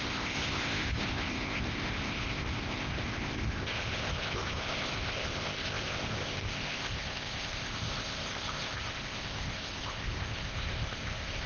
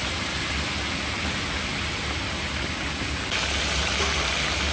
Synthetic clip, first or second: first